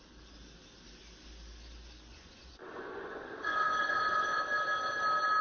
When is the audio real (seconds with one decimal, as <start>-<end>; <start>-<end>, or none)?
0.0-2.1; 4.4-5.4